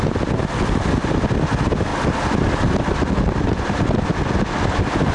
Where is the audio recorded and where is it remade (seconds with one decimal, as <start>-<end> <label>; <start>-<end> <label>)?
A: 0.0-5.1 recorded